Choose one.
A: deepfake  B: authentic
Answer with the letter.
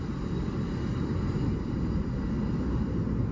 B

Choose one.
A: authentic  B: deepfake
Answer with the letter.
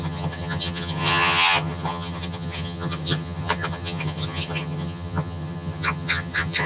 B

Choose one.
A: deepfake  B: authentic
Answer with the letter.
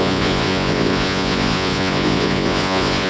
A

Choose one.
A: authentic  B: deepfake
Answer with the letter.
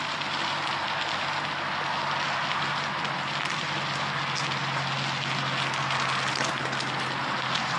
A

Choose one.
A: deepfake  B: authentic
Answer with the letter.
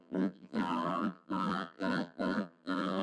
A